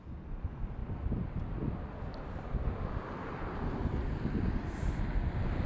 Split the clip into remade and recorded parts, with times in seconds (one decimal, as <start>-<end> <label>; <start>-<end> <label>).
0.0-5.7 recorded